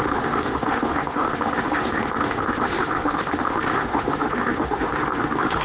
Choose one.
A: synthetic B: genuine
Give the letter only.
A